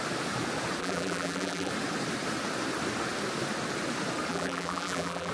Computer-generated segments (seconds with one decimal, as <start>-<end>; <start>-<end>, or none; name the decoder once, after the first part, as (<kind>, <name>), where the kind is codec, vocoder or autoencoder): 0.8-1.7 (vocoder, BigVGAN v2); 4.3-5.3

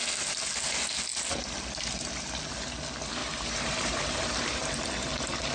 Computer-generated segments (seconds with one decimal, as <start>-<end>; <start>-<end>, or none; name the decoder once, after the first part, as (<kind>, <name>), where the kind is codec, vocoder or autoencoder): 3.2-4.8 (vocoder, BigVGAN v2)

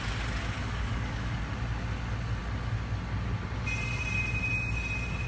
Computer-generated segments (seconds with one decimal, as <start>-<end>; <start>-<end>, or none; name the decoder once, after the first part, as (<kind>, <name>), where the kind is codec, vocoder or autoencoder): 0.6-1.4 (codec, DAC)

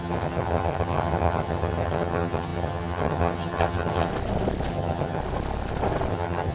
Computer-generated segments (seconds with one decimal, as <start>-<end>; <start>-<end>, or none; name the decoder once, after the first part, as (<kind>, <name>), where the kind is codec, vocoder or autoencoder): 0.0-4.1 (vocoder, HiFi-GAN); 4.7-5.2; 6.1-6.5

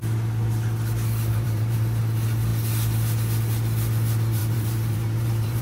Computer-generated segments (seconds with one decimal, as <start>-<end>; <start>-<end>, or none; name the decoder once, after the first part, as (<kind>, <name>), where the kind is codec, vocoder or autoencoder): 1.3-2.0 (vocoder, BigVGAN v2); 4.4-5.6

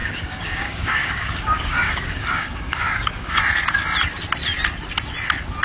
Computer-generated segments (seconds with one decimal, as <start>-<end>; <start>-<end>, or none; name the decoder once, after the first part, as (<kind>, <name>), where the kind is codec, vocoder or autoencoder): 0.0-3.4 (codec, DAC)

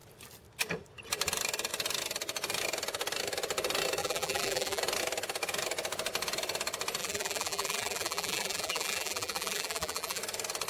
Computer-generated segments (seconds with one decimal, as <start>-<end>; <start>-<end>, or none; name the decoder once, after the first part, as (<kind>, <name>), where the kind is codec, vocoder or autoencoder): 4.0-4.8 (vocoder, BigVGAN v2); 7.0-10.2